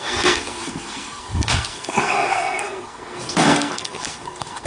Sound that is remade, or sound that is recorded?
remade